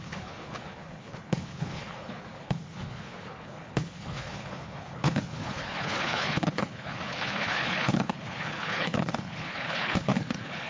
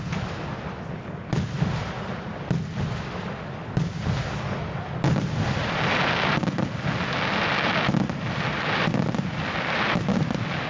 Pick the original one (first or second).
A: second